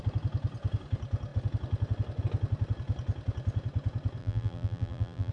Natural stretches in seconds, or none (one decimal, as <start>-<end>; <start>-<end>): 0.0-4.2